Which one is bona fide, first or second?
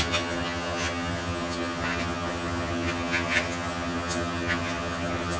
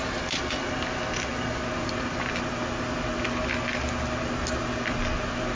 second